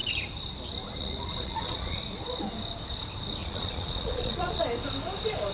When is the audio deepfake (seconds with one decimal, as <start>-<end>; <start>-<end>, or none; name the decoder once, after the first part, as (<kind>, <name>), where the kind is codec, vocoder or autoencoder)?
1.0-2.0 (vocoder, Vocos); 3.4-4.6